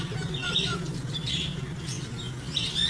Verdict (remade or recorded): recorded